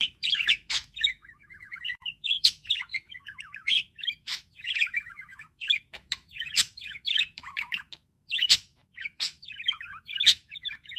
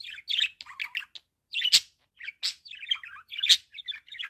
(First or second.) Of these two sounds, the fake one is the first